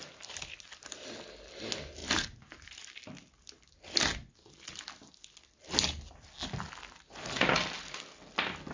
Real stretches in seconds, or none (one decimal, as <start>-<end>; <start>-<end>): 0.0-8.7